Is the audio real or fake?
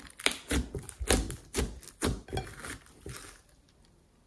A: real